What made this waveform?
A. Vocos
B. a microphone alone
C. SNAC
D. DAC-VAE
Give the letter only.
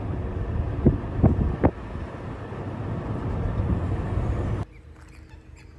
B